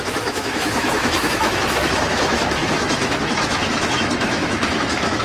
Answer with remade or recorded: remade